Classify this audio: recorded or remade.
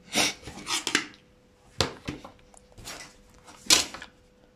recorded